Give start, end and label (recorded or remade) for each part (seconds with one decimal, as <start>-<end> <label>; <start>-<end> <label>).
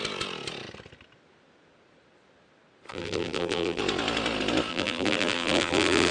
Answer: 0.0-2.9 recorded; 2.9-3.8 remade; 3.8-4.7 recorded; 4.7-6.1 remade